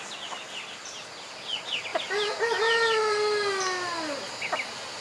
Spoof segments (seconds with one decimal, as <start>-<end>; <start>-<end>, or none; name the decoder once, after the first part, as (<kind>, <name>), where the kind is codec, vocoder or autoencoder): none